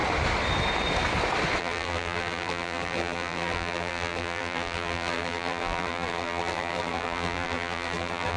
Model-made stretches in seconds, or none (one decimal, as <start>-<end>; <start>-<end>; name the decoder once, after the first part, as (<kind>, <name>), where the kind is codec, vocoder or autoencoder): 1.6-8.4 (vocoder, BigVGAN v2)